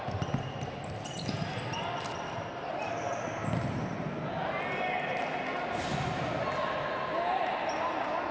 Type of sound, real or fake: real